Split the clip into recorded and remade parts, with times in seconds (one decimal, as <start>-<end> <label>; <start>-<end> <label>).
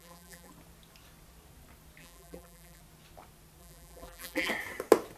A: 0.0-0.5 remade; 0.5-2.0 recorded; 2.0-2.8 remade; 2.8-3.6 recorded; 3.6-4.5 remade; 4.5-5.2 recorded